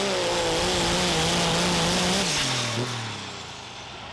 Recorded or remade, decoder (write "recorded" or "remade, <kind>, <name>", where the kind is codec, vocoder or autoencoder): recorded